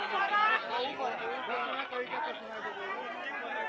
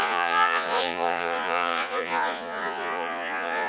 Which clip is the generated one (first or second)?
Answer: second